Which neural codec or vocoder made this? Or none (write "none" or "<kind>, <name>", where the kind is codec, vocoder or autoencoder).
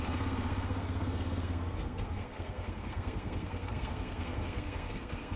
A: codec, SNAC